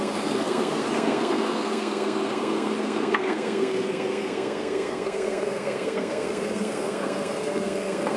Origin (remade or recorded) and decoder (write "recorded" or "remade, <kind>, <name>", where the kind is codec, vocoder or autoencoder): remade, codec, SNAC